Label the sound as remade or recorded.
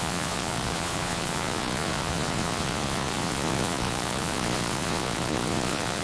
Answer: remade